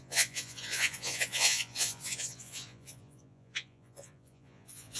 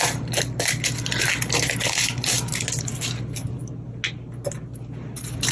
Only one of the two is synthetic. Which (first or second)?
first